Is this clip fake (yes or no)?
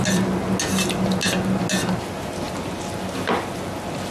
no